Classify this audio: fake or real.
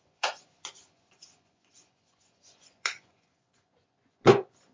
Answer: fake